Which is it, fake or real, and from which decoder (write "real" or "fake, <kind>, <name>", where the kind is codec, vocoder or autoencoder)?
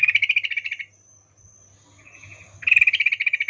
real